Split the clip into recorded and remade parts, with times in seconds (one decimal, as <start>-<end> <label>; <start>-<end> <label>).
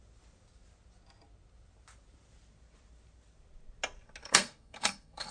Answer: 0.0-4.2 recorded; 4.2-5.3 remade